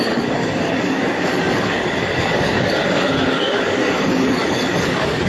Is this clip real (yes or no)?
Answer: no